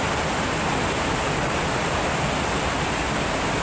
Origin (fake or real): real